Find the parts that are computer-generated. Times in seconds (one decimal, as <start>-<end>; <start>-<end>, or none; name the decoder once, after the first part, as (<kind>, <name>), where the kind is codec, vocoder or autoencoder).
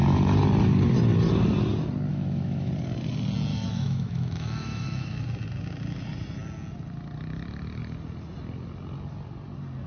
2.1-2.7 (autoencoder, DAC-VAE); 3.5-5.2